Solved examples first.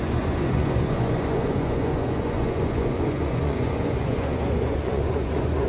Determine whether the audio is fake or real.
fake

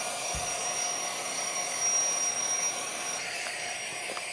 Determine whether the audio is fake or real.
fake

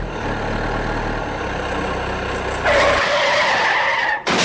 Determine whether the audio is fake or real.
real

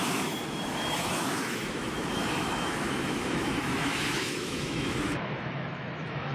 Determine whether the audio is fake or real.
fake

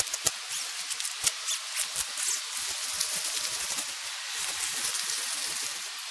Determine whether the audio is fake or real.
real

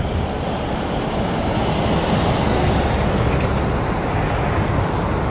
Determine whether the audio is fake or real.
real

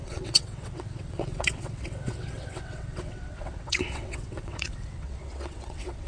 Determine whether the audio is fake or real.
fake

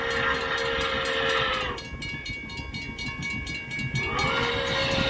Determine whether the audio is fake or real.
real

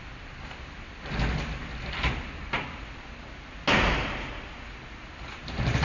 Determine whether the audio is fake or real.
real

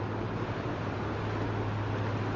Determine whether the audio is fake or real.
real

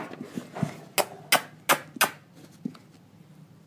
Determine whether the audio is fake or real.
real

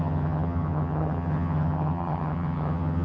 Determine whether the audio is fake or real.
fake